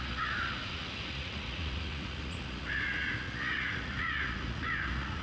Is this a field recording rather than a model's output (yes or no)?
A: no